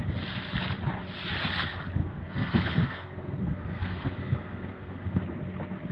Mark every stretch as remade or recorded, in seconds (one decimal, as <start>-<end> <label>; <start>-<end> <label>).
0.0-2.0 recorded; 2.0-5.2 remade; 5.2-5.9 recorded